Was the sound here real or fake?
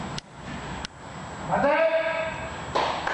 real